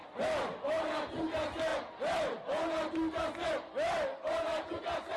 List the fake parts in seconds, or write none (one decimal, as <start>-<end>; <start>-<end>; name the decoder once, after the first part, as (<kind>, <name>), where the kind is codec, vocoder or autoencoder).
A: none